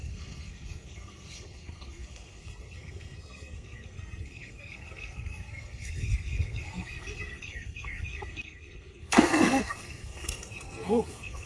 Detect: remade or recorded remade